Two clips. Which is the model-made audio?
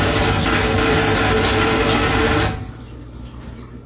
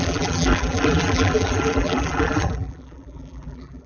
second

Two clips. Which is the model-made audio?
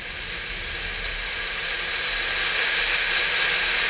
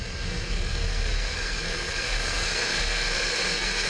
second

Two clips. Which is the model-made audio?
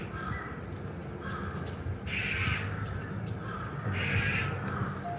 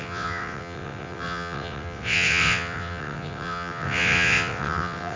second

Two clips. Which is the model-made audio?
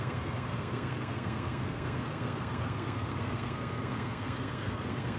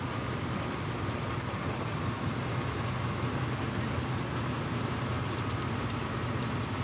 first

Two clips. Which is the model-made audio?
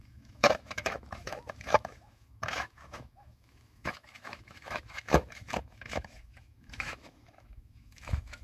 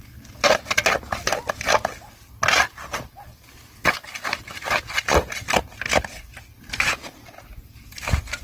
first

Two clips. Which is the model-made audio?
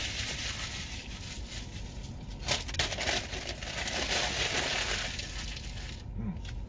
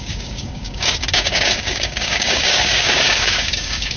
second